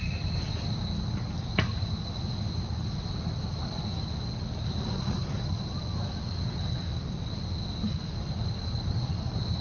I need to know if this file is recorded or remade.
recorded